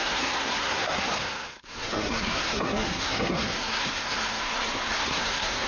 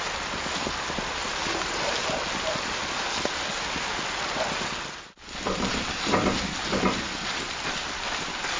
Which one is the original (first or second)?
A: second